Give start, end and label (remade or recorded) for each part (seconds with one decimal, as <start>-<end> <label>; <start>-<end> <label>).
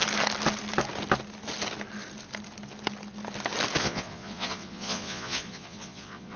0.0-3.8 recorded; 3.8-6.4 remade